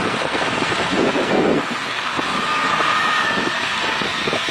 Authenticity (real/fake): fake